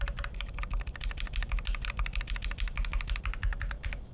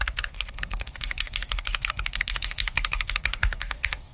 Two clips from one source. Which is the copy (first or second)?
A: second